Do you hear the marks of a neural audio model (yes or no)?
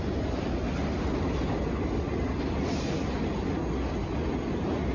no